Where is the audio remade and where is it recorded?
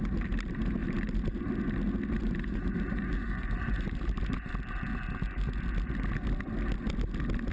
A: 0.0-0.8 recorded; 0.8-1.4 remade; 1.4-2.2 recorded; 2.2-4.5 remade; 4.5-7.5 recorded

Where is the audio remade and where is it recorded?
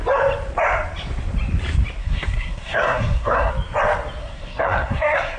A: 0.0-2.0 recorded; 2.0-3.5 remade; 3.5-4.2 recorded; 4.2-5.4 remade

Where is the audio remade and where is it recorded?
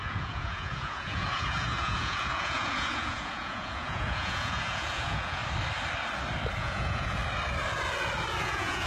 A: 0.0-5.4 remade; 5.4-6.6 recorded; 6.6-7.2 remade; 7.2-8.4 recorded; 8.4-8.9 remade